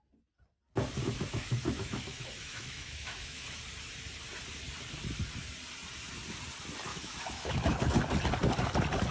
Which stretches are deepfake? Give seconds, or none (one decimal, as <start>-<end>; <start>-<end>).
1.0-3.6; 6.9-8.0